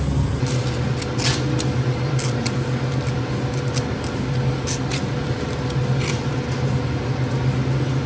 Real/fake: real